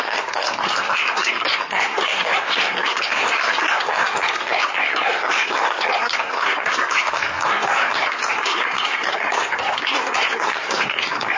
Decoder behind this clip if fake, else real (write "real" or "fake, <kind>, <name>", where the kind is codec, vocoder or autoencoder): fake, codec, SNAC